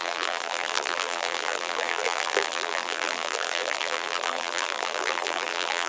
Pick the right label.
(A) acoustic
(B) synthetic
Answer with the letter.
B